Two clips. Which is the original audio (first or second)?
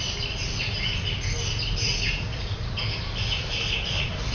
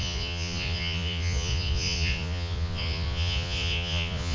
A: first